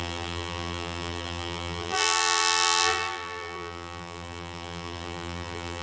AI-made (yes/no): yes